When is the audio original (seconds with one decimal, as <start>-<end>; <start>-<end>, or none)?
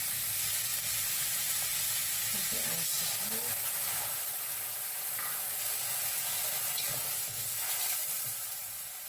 0.0-0.7; 1.6-2.0; 2.7-9.1